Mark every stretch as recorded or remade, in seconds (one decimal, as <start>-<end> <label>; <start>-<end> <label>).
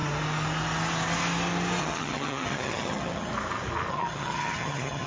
0.0-1.8 recorded; 1.8-3.3 remade; 3.3-3.9 recorded; 3.9-5.1 remade